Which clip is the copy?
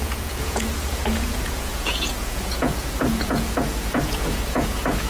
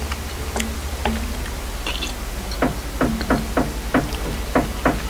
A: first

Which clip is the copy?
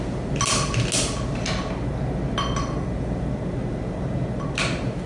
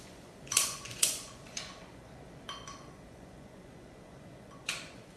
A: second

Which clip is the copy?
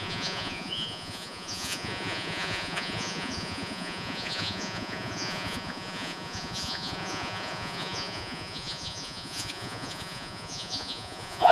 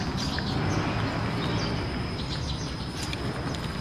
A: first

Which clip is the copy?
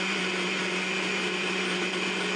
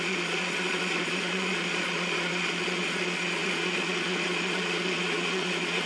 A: second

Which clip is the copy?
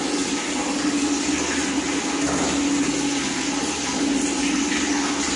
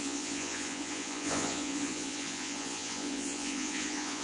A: second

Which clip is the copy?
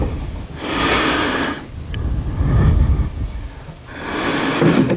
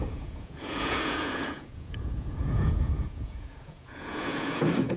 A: second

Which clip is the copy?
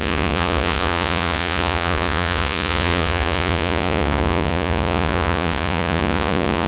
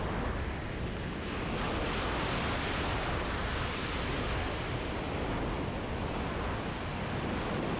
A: first